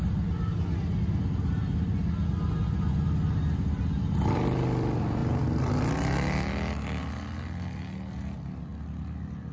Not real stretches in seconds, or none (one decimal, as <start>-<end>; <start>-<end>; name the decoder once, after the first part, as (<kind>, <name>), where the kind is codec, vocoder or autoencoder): none